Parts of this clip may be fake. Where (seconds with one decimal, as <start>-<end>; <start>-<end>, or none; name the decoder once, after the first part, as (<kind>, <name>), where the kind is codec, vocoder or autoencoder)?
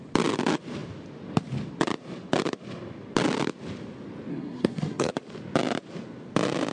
4.3-5.1 (codec, SNAC)